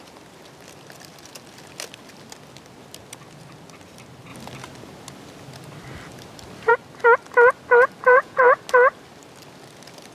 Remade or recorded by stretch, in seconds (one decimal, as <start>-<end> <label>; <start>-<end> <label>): 0.0-8.0 recorded; 8.0-8.6 remade; 8.6-10.1 recorded